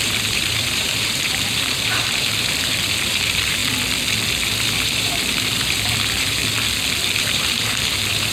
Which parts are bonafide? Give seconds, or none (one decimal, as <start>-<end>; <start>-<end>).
3.6-4.3; 6.4-7.2